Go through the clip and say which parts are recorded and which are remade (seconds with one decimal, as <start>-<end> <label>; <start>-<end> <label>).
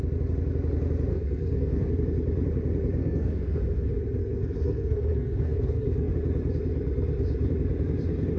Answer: 0.0-1.1 recorded; 1.1-1.9 remade; 1.9-3.0 recorded; 3.0-3.6 remade; 3.6-4.2 recorded; 4.2-6.1 remade; 6.1-8.4 recorded